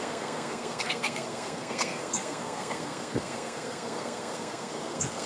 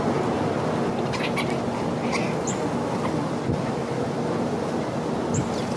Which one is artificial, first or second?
first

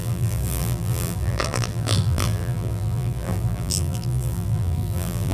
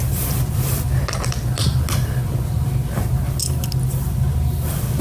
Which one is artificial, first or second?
first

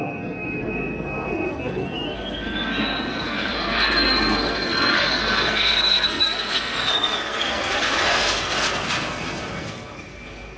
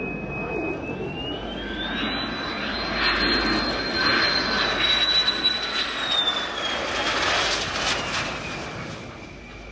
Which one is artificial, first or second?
first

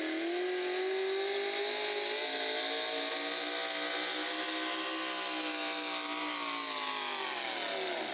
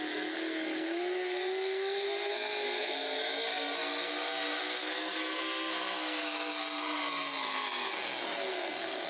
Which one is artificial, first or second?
second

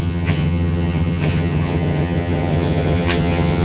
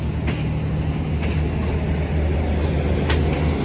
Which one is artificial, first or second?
first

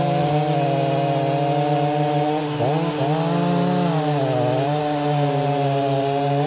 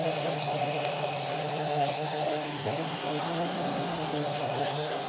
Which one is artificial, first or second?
second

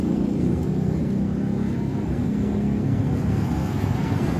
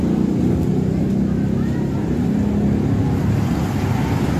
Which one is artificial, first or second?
first